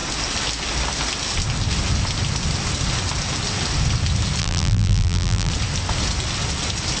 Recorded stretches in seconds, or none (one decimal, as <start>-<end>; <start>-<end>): 0.0-4.4; 5.5-7.0